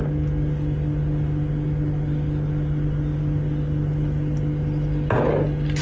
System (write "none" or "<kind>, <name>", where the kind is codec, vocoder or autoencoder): none